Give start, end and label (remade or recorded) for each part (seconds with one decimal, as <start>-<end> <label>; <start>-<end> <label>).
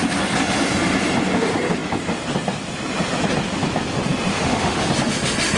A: 0.0-4.3 recorded; 4.3-4.9 remade; 4.9-5.6 recorded